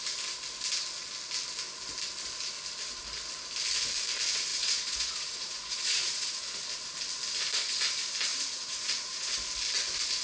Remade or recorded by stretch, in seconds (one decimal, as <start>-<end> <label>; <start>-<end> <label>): 0.0-4.5 recorded; 4.5-6.6 remade; 6.6-8.3 recorded; 8.3-9.3 remade; 9.3-10.2 recorded